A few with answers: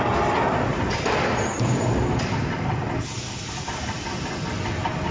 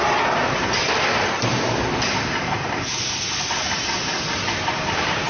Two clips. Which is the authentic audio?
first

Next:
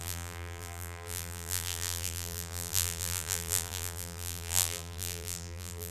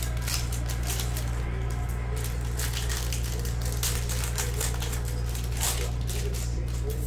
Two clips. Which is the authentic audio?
second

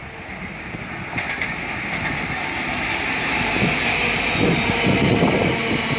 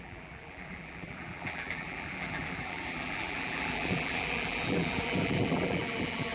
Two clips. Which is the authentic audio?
first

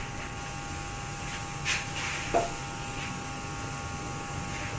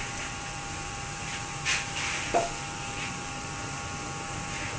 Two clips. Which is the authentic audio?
first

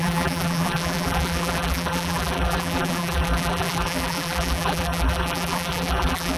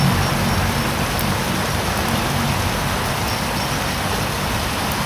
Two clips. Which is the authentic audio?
second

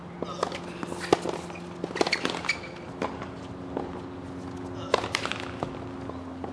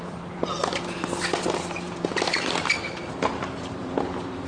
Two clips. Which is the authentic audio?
first